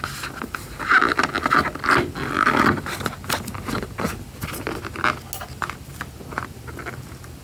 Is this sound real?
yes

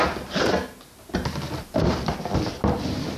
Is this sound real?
yes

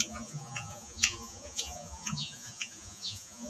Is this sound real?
no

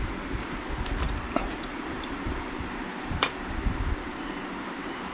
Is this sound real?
no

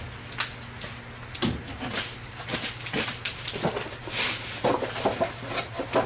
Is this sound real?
yes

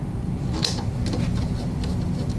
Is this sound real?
yes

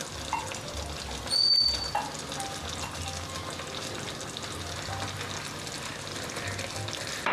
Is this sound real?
yes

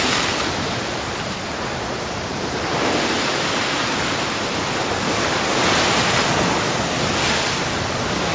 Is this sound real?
yes